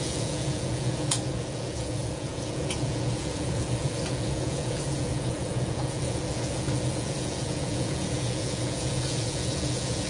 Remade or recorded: remade